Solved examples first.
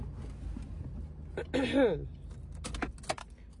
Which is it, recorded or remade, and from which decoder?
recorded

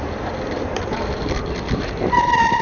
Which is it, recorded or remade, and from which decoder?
remade, vocoder, BigVGAN v2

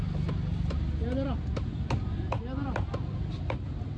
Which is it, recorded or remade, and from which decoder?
recorded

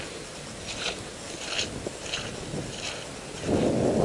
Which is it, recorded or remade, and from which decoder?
recorded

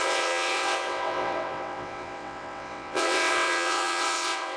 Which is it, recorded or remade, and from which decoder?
remade, vocoder, WaveNeXt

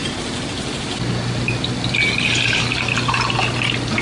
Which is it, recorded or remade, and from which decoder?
recorded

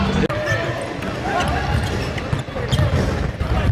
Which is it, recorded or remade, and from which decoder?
recorded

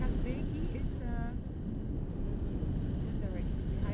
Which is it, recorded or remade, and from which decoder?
recorded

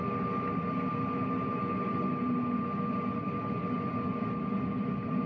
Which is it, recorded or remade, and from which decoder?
recorded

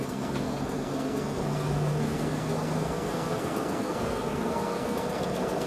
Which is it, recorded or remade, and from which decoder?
remade, codec, SNAC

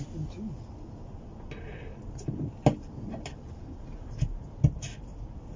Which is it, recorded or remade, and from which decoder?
recorded